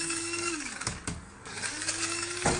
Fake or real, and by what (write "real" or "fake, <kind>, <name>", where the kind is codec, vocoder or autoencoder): fake, codec, DAC